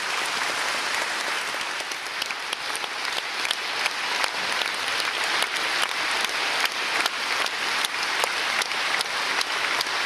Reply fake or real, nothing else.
real